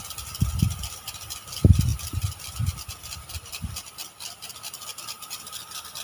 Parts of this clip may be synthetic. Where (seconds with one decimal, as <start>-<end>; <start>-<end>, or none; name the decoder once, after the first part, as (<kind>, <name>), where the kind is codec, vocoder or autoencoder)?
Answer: none

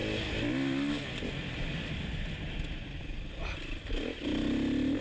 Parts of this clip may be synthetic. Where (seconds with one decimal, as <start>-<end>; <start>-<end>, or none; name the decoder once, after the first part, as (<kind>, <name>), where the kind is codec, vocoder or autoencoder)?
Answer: none

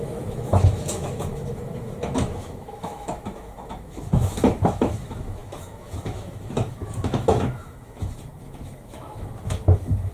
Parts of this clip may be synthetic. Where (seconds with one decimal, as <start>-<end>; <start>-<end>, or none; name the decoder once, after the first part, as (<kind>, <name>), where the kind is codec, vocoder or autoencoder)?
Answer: 0.0-10.1 (autoencoder, DAC-VAE)

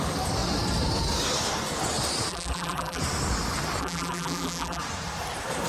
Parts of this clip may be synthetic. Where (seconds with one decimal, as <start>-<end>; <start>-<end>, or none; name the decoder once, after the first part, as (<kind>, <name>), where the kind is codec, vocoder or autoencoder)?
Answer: 2.3-3.0 (vocoder, BigVGAN v2); 3.8-4.8